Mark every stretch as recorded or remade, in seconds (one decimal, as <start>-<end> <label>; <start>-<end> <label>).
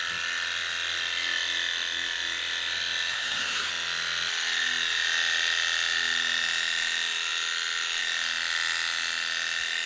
0.0-3.1 recorded; 3.1-3.7 remade; 3.7-9.9 recorded